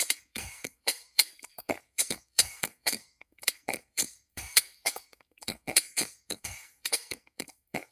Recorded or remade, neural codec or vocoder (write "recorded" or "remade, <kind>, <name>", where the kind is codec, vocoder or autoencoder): remade, codec, SNAC